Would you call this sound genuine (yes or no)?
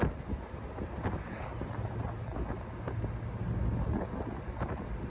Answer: yes